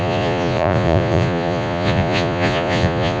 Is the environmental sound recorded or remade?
remade